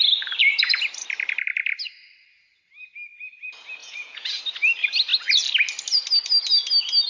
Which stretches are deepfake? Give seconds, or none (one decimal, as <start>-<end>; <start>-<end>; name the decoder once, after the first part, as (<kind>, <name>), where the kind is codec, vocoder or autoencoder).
3.8-4.4 (vocoder, Vocos)